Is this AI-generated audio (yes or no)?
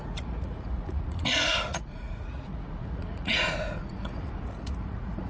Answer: yes